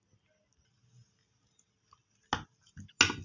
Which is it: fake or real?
real